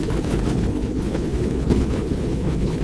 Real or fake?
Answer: fake